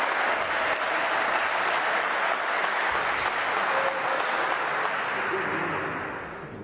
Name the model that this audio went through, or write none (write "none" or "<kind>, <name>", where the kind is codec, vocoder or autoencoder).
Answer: none